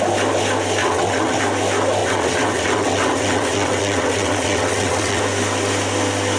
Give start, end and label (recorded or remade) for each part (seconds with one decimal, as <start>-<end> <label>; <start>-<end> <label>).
0.0-0.8 recorded; 0.8-1.4 remade; 1.4-2.0 recorded; 2.0-5.2 remade; 5.2-6.4 recorded